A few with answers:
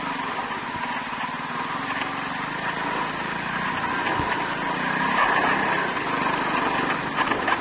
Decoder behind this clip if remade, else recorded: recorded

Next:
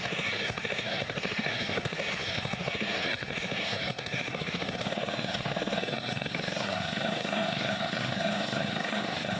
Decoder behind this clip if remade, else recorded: remade, codec, SNAC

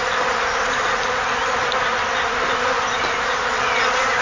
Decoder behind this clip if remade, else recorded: recorded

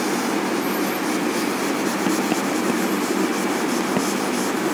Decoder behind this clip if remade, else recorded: recorded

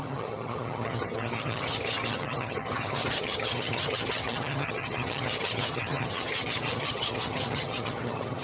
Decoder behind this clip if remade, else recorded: remade, vocoder, HiFi-GAN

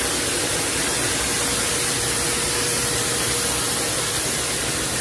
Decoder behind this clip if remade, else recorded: recorded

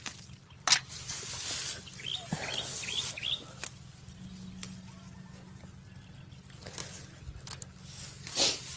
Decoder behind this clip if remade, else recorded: recorded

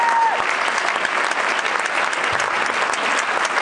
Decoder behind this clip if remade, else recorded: recorded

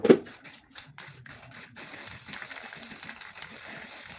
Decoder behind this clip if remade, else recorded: recorded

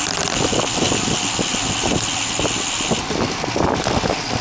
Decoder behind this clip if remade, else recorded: recorded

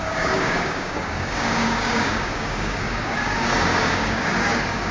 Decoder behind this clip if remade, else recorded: remade, codec, DAC